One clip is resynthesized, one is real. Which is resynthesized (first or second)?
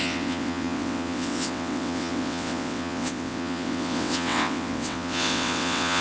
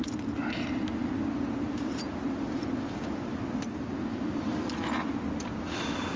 first